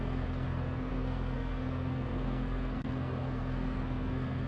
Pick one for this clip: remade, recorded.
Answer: remade